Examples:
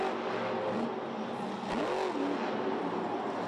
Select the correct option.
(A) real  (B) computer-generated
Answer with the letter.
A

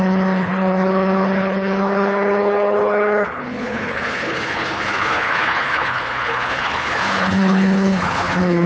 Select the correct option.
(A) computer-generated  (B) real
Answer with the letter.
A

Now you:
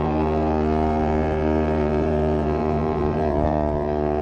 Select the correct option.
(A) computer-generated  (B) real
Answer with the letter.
A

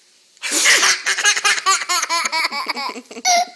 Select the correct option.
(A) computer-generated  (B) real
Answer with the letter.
B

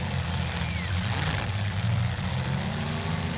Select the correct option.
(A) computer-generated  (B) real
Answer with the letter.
A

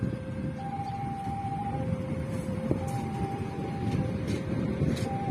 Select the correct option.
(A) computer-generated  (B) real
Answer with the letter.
A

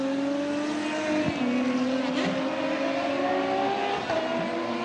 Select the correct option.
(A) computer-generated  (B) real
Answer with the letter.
B